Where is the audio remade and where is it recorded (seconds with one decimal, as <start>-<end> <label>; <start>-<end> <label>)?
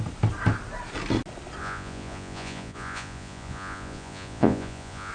0.0-1.6 recorded; 1.6-5.1 remade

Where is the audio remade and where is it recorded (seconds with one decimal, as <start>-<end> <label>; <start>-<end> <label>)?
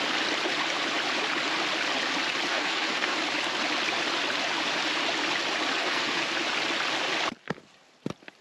0.0-2.5 recorded; 2.5-3.2 remade; 3.2-5.8 recorded; 5.8-6.3 remade; 6.3-8.4 recorded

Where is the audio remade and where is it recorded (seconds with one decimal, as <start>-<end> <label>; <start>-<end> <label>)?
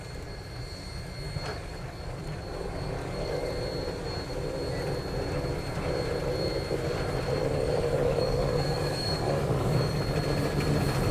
0.0-1.5 recorded; 1.5-2.2 remade; 2.2-3.0 recorded; 3.0-3.5 remade; 3.5-7.4 recorded; 7.4-10.0 remade; 10.0-11.1 recorded